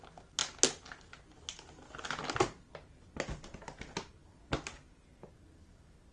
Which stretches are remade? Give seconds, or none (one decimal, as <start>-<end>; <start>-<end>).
none